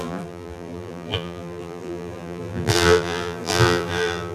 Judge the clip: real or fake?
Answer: fake